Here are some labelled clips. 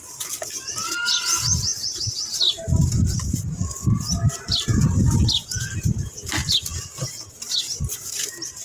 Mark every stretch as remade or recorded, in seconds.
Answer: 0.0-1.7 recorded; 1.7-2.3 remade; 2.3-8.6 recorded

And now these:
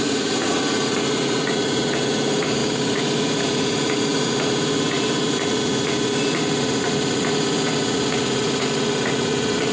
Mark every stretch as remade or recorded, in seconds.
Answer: 0.0-9.7 remade

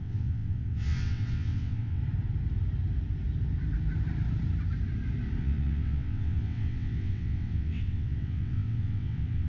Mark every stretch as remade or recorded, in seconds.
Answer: 0.0-2.0 remade; 2.0-5.4 recorded; 5.4-9.5 remade

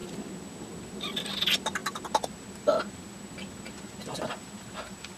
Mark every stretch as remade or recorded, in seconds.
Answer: 0.0-5.2 recorded

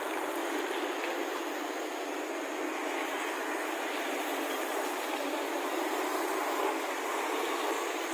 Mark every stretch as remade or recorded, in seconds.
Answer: 0.0-8.1 recorded